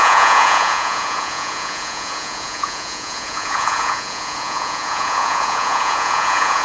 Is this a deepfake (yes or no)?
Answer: yes